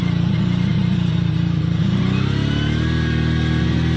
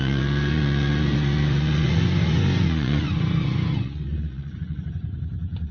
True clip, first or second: first